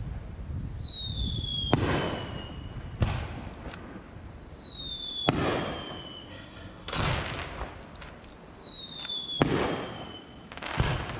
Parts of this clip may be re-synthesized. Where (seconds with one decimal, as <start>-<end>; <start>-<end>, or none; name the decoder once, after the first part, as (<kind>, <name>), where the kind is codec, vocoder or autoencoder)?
6.3-7.0 (codec, SNAC)